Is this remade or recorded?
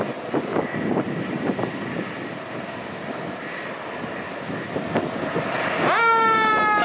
recorded